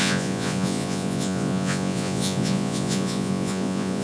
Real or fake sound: fake